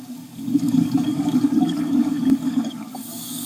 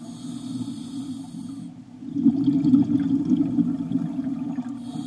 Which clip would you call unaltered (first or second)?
second